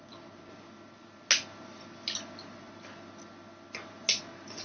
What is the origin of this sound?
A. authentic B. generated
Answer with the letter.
A